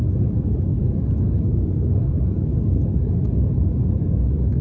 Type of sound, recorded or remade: remade